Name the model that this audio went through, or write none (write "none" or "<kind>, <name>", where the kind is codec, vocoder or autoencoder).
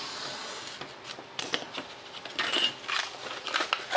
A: none